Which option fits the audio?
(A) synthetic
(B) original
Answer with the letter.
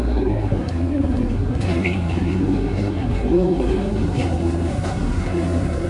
A